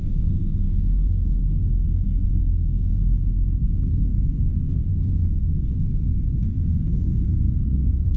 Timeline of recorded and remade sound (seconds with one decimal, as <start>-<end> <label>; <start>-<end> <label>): 0.0-5.7 remade; 5.7-6.4 recorded; 6.4-8.2 remade